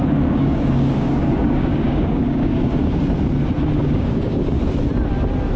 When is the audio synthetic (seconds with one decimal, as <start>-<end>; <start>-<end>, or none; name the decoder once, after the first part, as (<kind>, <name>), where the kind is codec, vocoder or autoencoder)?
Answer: 0.0-3.0 (codec, DAC); 3.8-4.6